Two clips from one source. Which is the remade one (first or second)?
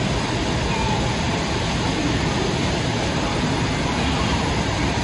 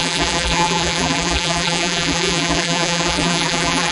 second